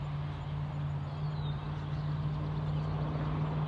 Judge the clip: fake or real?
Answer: real